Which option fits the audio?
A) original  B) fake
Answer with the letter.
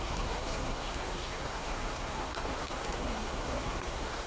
B